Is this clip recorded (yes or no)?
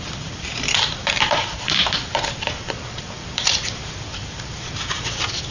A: no